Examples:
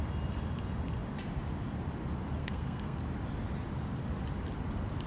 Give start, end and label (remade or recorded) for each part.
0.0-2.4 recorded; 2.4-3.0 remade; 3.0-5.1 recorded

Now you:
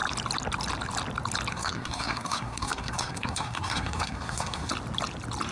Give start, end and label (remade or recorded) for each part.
0.0-1.5 recorded; 1.5-4.7 remade; 4.7-5.5 recorded

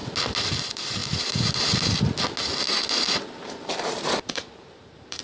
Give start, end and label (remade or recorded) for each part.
0.0-0.6 recorded; 0.6-1.0 remade; 1.0-3.3 recorded; 3.3-5.2 remade

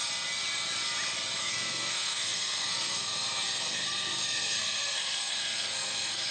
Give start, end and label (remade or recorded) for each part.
0.0-1.4 recorded; 1.4-6.3 remade